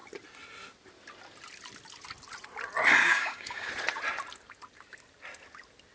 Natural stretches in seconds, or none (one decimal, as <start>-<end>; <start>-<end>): 0.0-3.0; 3.7-5.9